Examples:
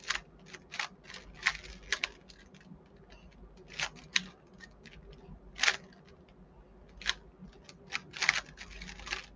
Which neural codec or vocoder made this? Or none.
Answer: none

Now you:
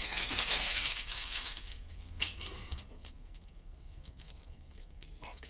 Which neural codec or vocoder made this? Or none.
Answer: codec, SNAC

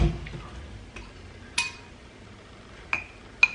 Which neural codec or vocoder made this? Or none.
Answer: none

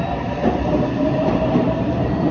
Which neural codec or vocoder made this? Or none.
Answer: vocoder, BigVGAN v2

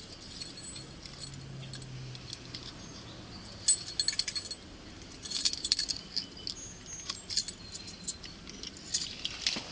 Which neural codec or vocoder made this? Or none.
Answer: none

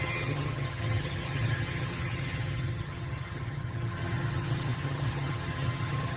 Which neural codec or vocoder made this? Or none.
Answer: vocoder, HiFi-GAN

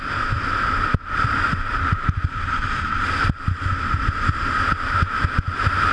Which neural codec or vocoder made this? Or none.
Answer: vocoder, BigVGAN v2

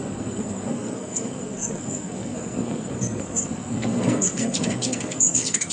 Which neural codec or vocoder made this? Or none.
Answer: codec, SNAC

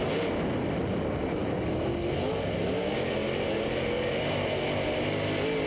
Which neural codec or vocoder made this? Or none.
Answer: none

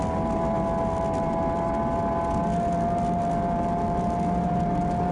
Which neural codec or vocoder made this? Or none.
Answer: none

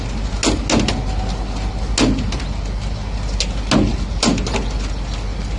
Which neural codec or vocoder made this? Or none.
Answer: none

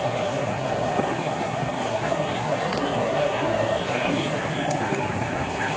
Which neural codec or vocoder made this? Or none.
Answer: codec, SNAC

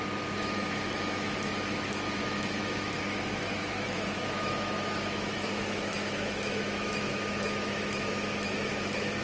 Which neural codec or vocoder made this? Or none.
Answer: autoencoder, DAC-VAE